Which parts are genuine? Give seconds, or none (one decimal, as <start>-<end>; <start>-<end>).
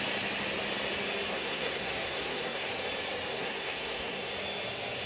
0.0-1.3; 2.7-3.3; 4.3-5.1